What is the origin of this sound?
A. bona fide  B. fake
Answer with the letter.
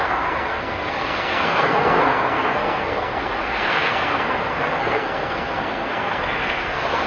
B